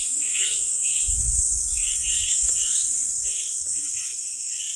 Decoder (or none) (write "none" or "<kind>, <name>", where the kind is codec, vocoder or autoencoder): codec, SNAC